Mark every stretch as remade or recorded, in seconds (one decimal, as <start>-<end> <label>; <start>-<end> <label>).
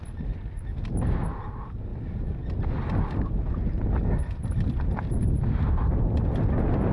0.0-6.9 recorded